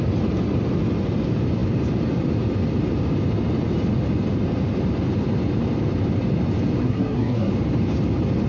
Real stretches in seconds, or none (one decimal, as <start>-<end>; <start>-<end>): 0.0-6.8; 7.5-8.5